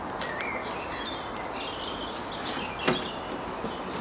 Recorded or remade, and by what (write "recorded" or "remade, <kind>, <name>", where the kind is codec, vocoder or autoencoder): recorded